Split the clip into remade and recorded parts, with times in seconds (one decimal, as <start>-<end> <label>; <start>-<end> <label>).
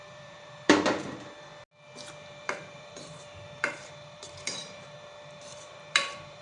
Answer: 0.0-1.5 remade; 1.5-2.3 recorded; 2.3-6.4 remade